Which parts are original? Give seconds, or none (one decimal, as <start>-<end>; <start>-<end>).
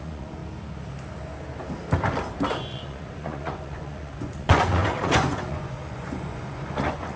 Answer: 0.4-2.5